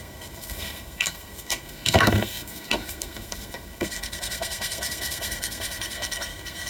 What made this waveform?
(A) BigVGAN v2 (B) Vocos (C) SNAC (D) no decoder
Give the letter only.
C